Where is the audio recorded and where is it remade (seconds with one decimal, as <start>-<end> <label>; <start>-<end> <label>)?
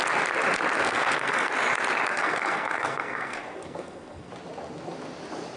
0.0-0.8 recorded; 0.8-1.5 remade; 1.5-2.1 recorded; 2.1-4.3 remade; 4.3-5.6 recorded